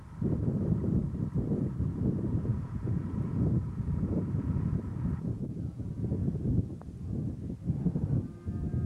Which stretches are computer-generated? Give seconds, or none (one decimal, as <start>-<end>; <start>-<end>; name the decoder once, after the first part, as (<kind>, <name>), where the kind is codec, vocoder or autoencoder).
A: 2.5-6.7 (vocoder, Vocos)